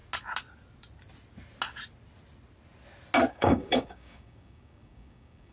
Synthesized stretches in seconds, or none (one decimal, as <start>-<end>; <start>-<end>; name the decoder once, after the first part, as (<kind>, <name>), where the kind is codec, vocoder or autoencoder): 3.3-5.5 (codec, DAC)